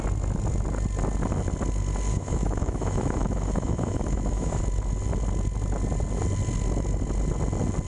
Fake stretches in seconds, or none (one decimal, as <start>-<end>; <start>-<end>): 2.1-4.6